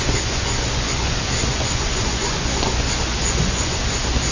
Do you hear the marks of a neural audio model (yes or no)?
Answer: yes